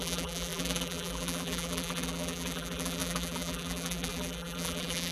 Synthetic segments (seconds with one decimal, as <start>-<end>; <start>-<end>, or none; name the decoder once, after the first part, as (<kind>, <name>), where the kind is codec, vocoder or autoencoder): 0.0-5.1 (vocoder, BigVGAN v2)